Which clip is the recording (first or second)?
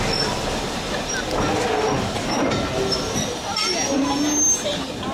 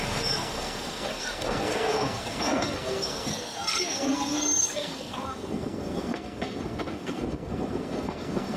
first